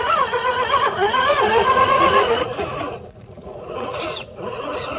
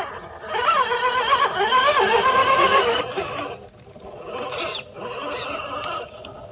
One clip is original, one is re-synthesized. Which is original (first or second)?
second